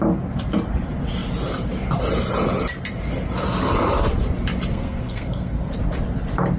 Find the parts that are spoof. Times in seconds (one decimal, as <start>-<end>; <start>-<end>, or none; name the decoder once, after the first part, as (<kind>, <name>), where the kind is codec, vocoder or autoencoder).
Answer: 4.7-5.7 (codec, SNAC)